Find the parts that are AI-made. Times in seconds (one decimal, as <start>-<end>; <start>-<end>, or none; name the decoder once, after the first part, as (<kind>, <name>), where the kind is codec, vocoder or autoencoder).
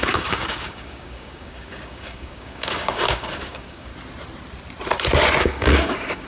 0.0-3.9 (codec, DAC); 5.4-6.3